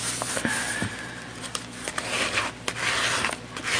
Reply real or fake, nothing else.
real